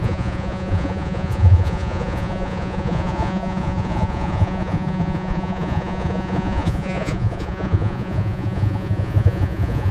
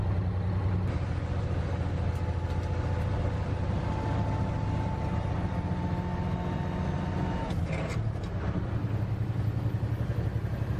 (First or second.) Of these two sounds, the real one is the second